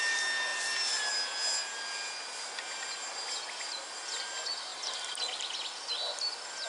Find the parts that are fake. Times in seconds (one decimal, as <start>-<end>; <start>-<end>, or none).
none